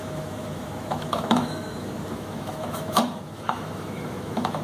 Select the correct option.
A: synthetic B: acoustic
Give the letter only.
A